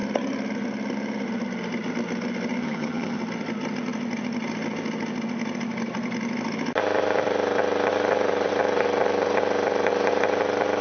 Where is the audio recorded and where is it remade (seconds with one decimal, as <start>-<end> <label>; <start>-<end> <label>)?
0.0-2.6 recorded; 2.6-3.2 remade; 3.2-10.8 recorded